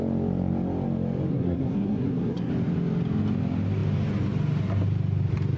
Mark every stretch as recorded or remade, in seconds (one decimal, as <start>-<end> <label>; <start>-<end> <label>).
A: 0.0-1.3 recorded; 1.3-2.5 remade; 2.5-5.6 recorded